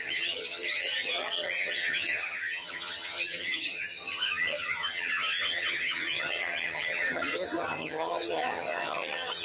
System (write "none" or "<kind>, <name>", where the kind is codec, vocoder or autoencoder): vocoder, HiFi-GAN